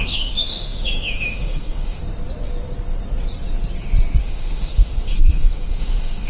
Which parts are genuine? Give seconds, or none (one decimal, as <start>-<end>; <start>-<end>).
2.0-4.2